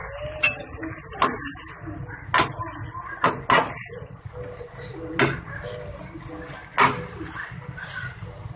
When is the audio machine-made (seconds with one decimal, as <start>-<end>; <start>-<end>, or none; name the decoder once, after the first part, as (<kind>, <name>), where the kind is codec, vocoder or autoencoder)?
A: none